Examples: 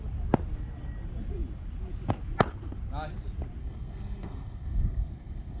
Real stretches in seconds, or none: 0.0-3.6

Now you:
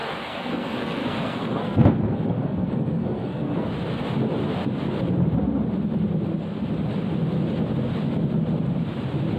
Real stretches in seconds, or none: 3.7-9.4

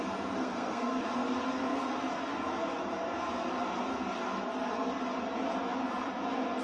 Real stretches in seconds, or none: 0.0-0.4; 1.0-6.6

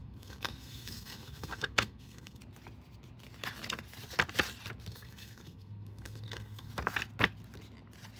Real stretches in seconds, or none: 2.4-4.9; 6.7-8.2

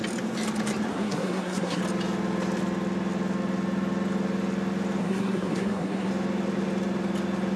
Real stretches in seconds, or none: 0.0-0.9; 1.8-5.0; 6.1-7.6

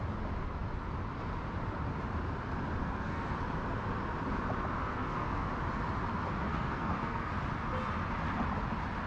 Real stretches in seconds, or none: 0.0-2.8; 3.3-4.8; 5.5-6.5; 7.3-9.1

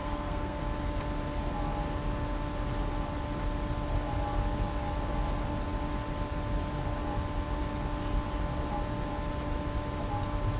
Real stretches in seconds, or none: 0.6-10.6

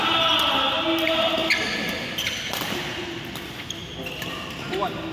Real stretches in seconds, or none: 0.0-5.1